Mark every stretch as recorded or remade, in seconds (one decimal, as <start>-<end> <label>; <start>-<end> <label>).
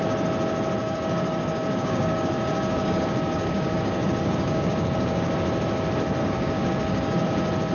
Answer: 0.0-0.8 recorded; 0.8-5.3 remade; 5.3-6.2 recorded; 6.2-7.3 remade; 7.3-7.7 recorded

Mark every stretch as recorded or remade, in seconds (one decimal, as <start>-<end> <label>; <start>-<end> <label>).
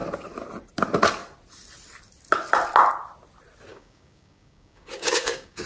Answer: 0.0-3.7 recorded; 3.7-5.7 remade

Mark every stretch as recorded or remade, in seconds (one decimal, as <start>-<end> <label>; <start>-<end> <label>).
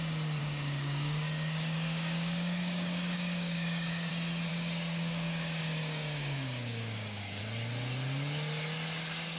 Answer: 0.0-0.4 recorded; 0.4-4.1 remade; 4.1-4.5 recorded; 4.5-7.4 remade; 7.4-9.4 recorded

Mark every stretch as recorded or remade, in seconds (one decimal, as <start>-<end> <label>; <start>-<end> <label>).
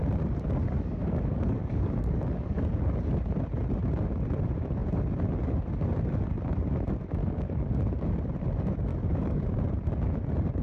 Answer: 0.0-0.6 recorded; 0.6-2.7 remade; 2.7-7.2 recorded; 7.2-8.1 remade; 8.1-8.9 recorded; 8.9-9.6 remade; 9.6-10.6 recorded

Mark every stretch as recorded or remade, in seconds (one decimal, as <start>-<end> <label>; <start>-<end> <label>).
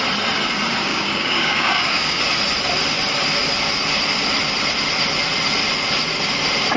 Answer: 0.0-0.9 recorded; 0.9-2.2 remade; 2.2-6.8 recorded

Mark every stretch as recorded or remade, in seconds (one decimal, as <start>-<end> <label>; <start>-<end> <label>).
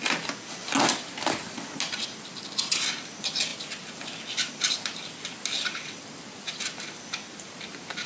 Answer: 0.0-8.1 recorded